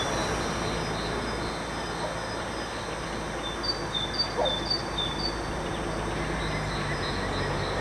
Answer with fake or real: real